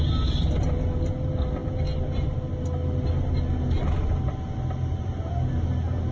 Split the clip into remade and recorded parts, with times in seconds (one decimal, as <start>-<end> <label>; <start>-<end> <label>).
0.0-6.1 recorded